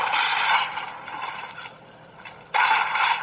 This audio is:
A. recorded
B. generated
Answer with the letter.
A